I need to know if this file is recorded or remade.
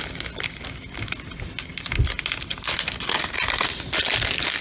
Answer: recorded